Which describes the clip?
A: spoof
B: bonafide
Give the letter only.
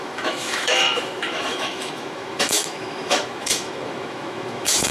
A